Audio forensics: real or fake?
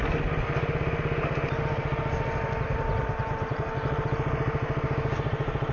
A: real